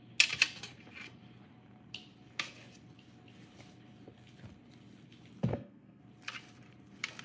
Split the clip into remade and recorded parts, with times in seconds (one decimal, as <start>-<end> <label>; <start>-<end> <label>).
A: 0.0-5.5 recorded; 5.5-6.0 remade; 6.0-7.2 recorded